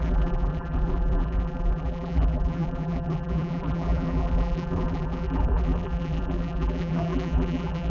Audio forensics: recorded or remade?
remade